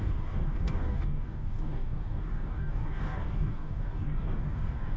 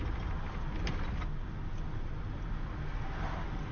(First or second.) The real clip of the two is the second